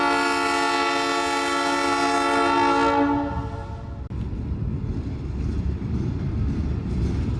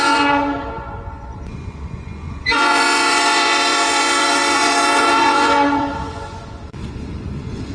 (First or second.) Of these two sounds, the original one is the first